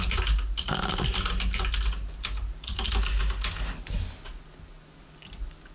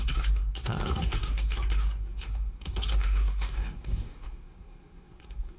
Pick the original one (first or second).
first